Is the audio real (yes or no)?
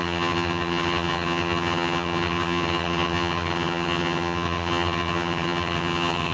no